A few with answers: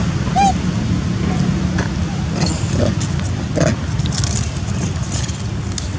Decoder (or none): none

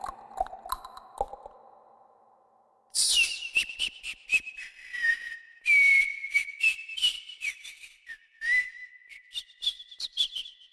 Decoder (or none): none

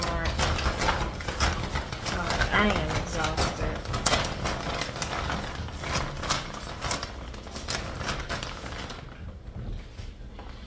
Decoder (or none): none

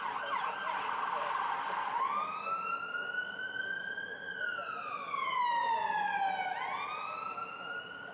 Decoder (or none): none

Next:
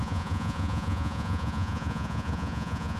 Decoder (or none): vocoder, Vocos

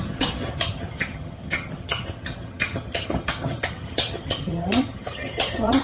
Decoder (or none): vocoder, HiFi-GAN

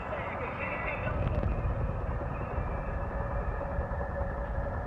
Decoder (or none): none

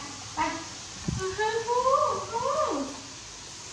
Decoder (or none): none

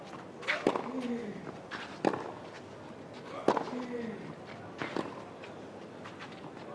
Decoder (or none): none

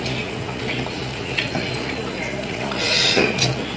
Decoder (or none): vocoder, Vocos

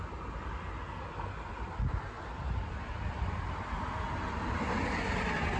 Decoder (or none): none